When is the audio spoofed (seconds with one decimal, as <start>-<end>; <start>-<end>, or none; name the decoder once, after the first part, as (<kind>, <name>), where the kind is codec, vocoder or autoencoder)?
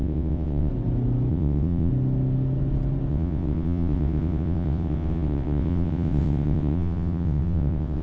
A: 0.0-0.7 (vocoder, WaveNeXt); 1.3-1.9; 3.1-8.0